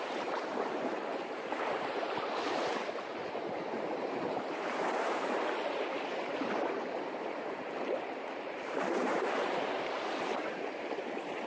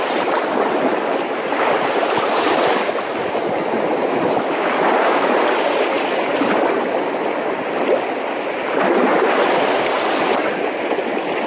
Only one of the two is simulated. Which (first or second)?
first